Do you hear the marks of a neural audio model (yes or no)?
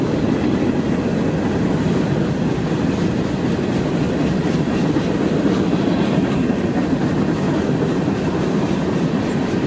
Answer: no